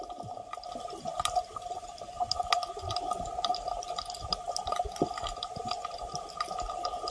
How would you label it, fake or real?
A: real